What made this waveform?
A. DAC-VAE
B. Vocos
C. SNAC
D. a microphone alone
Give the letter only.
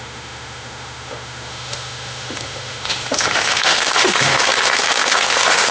A